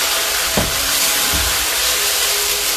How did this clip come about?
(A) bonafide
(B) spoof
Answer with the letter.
A